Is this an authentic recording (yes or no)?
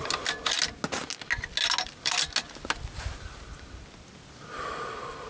yes